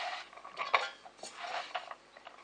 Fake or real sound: real